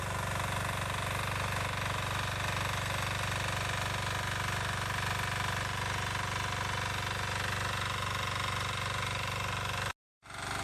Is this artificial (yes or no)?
no